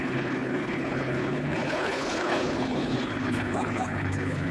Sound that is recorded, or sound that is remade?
remade